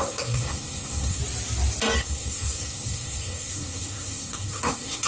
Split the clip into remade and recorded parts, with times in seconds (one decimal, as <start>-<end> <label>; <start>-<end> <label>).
0.0-1.2 remade; 1.2-2.0 recorded; 2.0-5.1 remade